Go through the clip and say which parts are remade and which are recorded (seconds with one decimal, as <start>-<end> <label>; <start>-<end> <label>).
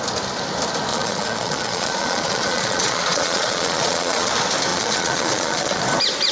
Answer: 0.0-0.9 recorded; 0.9-4.3 remade; 4.3-4.7 recorded; 4.7-5.8 remade; 5.8-6.3 recorded